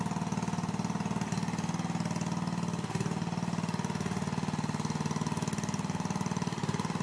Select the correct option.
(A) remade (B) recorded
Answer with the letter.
B